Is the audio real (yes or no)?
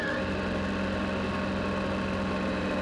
yes